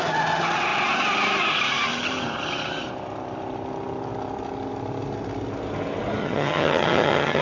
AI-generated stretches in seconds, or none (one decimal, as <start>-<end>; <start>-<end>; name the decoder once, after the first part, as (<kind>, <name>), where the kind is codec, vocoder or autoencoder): 6.2-7.4 (vocoder, HiFi-GAN)